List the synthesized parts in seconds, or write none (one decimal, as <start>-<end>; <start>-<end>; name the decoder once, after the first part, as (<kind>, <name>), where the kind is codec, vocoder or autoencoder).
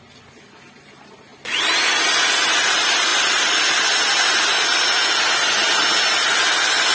none